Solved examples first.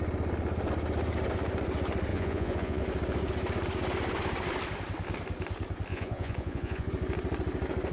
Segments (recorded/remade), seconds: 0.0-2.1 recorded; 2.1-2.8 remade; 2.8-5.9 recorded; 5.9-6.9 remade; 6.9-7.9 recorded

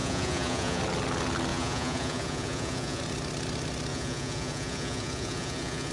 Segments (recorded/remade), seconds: 0.0-0.8 remade; 0.8-1.5 recorded; 1.5-3.0 remade; 3.0-3.9 recorded; 3.9-5.9 remade

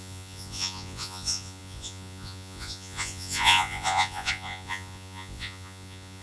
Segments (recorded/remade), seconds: 0.0-6.2 remade